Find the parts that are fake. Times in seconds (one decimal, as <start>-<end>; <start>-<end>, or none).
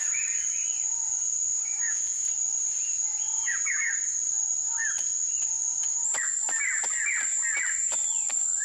1.5-2.3; 3.1-3.9